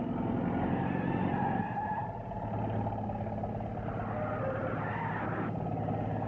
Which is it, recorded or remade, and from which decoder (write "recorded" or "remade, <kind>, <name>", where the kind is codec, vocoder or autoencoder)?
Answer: recorded